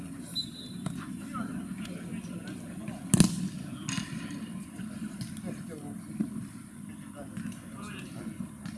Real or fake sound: real